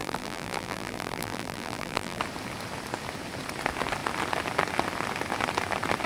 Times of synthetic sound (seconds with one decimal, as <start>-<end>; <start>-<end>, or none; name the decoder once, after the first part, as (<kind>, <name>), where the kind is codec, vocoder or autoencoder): 0.0-2.2 (vocoder, BigVGAN v2)